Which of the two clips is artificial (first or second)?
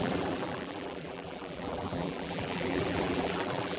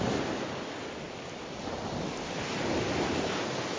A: first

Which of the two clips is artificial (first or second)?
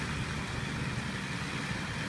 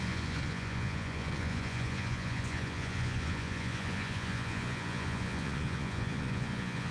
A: second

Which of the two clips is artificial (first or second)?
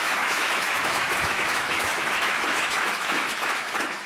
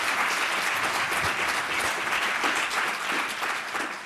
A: first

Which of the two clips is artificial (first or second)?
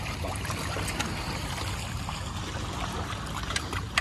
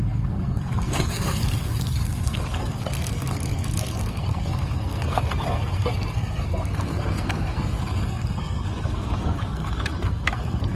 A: second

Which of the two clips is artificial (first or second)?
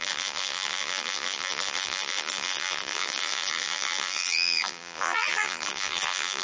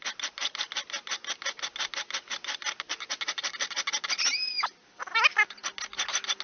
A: first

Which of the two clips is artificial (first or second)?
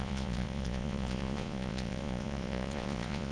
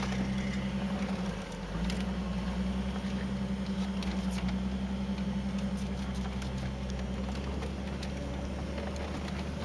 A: first